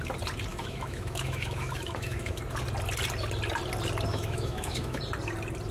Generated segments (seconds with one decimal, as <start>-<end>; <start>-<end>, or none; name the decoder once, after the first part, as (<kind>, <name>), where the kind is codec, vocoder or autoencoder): 0.5-2.4 (autoencoder, DAC-VAE); 4.1-5.0